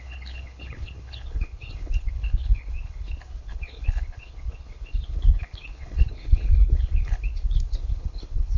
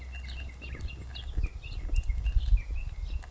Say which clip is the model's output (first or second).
first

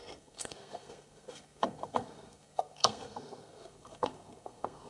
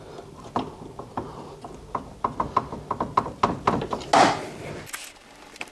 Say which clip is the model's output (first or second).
first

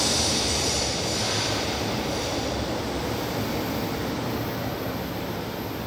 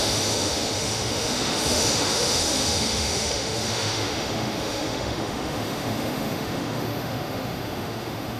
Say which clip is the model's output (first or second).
second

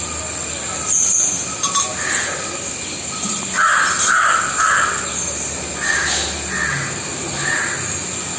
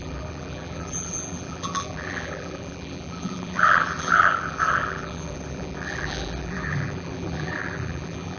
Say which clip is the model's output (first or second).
second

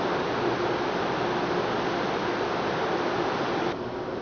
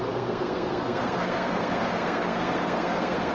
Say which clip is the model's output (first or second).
second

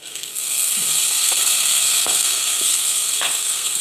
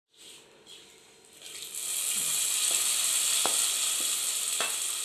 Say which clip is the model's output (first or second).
first